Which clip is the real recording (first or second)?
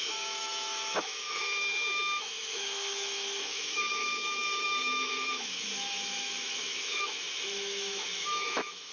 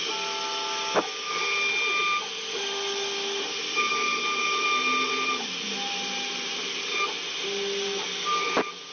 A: second